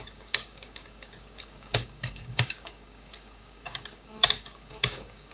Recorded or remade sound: remade